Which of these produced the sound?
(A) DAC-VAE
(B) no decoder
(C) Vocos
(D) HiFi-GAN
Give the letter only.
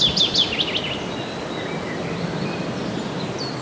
B